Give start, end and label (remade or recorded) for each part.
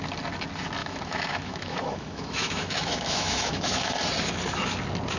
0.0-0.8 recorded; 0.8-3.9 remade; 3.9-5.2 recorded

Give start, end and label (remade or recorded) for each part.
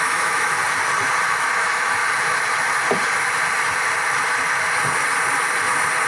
0.0-0.6 remade; 0.6-1.3 recorded; 1.3-2.0 remade; 2.0-6.1 recorded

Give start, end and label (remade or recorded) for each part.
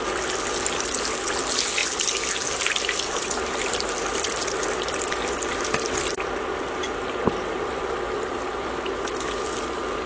0.0-10.1 recorded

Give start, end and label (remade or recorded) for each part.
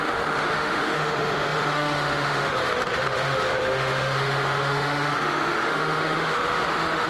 0.0-7.1 remade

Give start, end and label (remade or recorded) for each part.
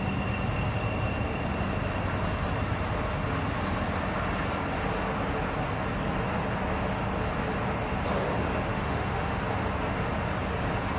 0.0-8.7 recorded; 8.7-9.4 remade; 9.4-11.0 recorded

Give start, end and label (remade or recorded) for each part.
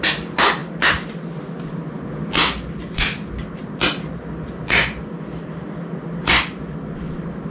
0.0-7.5 recorded